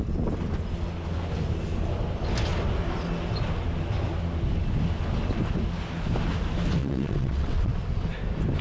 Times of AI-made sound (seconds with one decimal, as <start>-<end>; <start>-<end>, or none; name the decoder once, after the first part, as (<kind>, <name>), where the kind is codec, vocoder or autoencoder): 6.8-7.7 (vocoder, WaveNeXt)